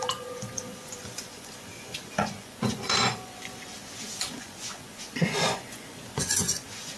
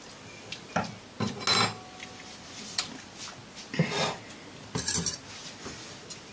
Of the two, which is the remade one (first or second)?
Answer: first